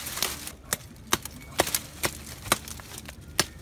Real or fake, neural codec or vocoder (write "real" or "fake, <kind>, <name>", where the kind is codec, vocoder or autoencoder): real